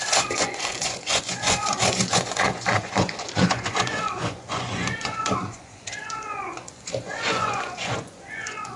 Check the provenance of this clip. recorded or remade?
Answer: remade